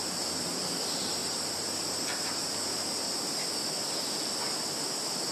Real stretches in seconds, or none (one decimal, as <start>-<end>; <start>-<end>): 0.0-1.2; 2.5-5.3